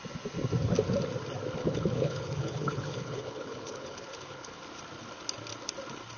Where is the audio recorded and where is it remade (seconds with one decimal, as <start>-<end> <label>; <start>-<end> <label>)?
0.0-1.6 recorded; 1.6-4.6 remade; 4.6-6.2 recorded